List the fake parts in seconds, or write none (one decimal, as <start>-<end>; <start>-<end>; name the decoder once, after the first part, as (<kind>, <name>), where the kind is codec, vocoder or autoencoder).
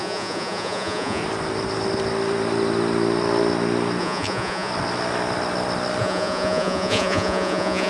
0.0-1.2 (vocoder, Vocos); 4.0-4.7; 6.0-7.9